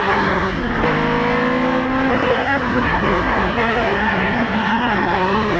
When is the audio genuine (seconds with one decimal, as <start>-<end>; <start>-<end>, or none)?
0.7-2.1